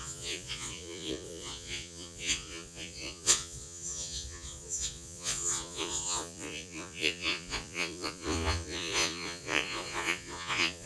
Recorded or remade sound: remade